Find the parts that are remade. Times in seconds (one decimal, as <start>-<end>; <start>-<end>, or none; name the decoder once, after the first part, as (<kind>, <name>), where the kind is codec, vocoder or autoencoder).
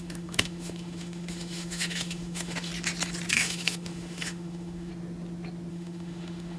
0.0-2.7 (autoencoder, DAC-VAE); 3.3-4.9; 5.7-6.6